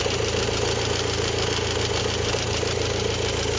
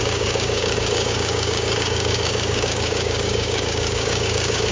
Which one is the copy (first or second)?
second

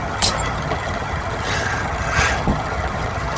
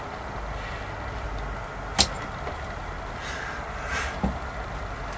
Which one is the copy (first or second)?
first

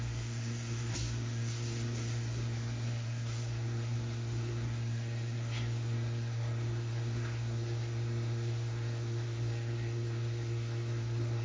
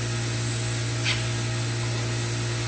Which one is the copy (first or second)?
first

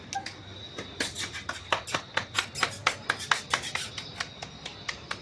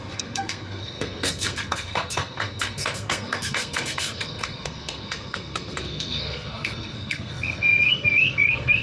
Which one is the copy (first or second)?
second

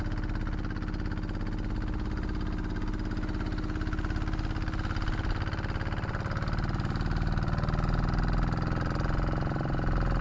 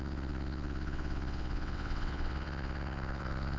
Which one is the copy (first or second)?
second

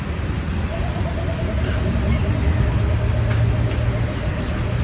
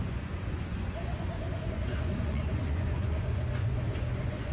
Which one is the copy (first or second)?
second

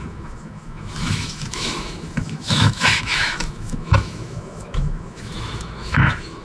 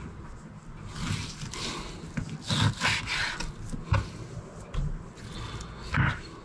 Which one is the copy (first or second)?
first